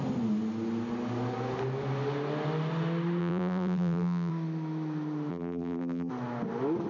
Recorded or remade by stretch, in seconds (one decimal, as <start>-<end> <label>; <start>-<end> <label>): 0.0-3.2 recorded; 3.2-4.3 remade; 4.3-5.3 recorded; 5.3-6.1 remade; 6.1-6.9 recorded